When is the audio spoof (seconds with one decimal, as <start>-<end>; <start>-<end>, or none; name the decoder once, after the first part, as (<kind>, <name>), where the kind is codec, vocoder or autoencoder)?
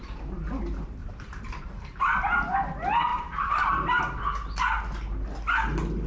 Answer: 1.0-2.0 (vocoder, BigVGAN v2); 3.1-4.0